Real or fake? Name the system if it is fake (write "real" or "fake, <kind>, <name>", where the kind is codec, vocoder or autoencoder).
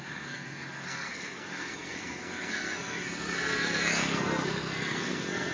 fake, codec, SNAC